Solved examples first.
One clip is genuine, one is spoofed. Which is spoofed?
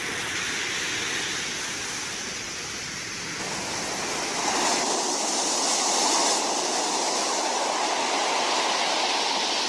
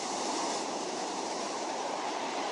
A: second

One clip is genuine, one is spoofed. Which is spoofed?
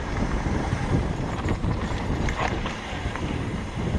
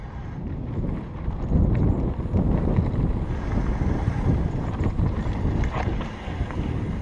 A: first